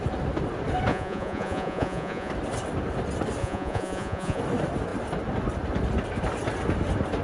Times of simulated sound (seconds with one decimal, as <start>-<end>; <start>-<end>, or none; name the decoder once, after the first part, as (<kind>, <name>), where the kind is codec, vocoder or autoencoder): 0.9-2.3 (vocoder, Vocos); 3.4-4.4